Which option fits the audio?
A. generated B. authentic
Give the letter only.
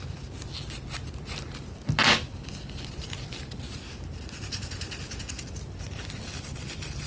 B